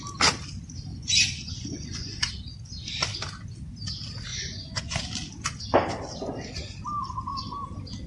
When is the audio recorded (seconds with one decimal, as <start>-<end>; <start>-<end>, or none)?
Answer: 0.0-0.9; 2.3-4.3; 4.8-8.1